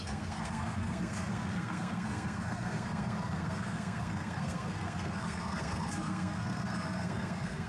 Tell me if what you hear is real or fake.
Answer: fake